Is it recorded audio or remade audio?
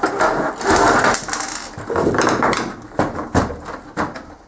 recorded